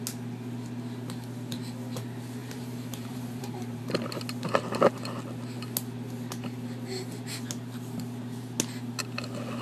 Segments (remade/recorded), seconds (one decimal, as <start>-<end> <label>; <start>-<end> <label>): 0.0-2.4 recorded; 2.4-4.2 remade; 4.2-9.6 recorded